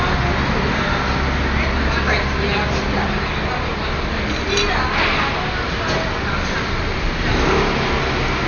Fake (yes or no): no